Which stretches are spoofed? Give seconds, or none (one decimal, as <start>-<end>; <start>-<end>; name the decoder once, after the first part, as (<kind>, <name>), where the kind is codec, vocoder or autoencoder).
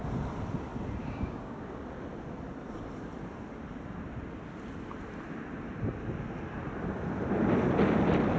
1.0-1.6 (codec, DAC)